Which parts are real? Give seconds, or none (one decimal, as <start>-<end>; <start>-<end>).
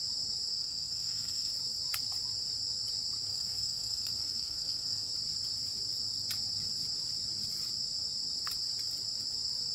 0.0-0.5; 1.5-3.3; 5.1-9.7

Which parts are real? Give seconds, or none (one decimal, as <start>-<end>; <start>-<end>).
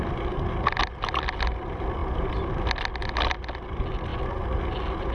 0.0-5.1